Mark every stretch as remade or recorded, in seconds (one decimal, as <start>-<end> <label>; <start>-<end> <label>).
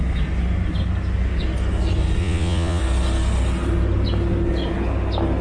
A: 0.0-2.2 recorded; 2.2-2.8 remade; 2.8-5.4 recorded